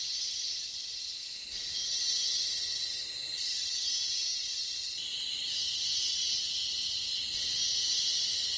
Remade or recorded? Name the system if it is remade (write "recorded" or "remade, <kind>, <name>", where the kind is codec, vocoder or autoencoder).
recorded